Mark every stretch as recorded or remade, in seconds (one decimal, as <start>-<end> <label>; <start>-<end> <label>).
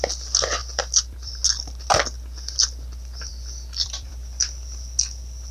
0.0-0.6 recorded; 0.6-1.4 remade; 1.4-3.3 recorded; 3.3-4.1 remade; 4.1-5.5 recorded